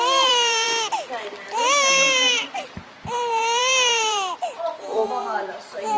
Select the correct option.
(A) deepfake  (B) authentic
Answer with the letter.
A